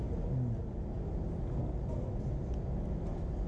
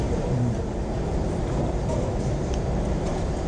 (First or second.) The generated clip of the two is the second